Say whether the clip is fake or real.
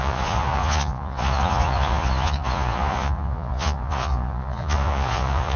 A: fake